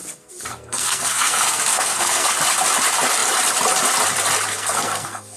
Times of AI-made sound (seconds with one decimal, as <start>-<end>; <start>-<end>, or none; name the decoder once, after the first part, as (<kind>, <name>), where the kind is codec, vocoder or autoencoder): 0.0-2.3 (codec, SNAC); 4.5-5.4